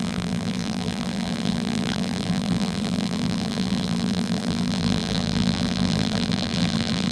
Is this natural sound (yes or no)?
no